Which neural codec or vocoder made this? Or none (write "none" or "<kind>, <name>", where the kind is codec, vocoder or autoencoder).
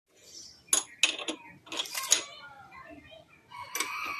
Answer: none